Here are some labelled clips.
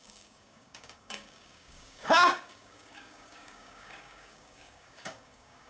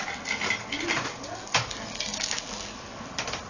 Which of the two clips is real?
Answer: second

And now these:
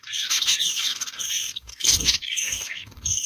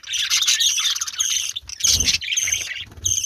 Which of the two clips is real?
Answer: second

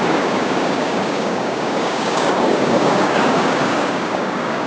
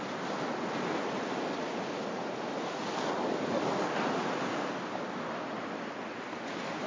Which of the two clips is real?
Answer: second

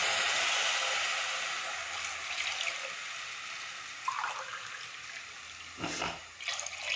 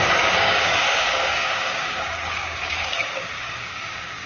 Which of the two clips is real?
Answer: first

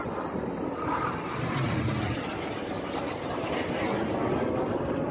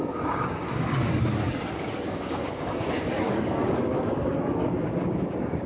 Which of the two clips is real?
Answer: first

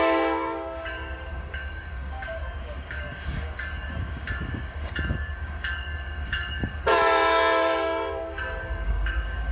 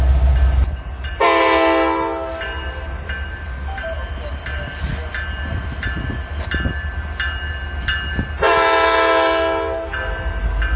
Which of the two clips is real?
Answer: second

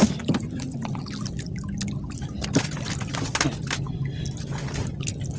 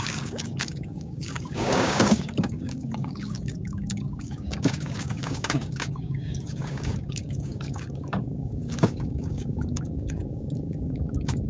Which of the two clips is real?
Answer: first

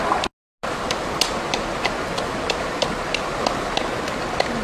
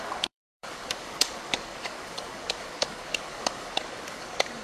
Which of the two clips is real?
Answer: first